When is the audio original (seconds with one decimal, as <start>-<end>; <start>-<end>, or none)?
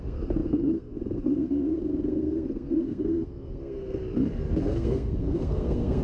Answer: 4.0-4.6